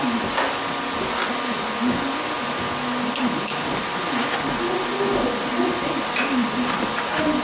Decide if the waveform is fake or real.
real